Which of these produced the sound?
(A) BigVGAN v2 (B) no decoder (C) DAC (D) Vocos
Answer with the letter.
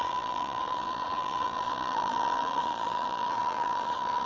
D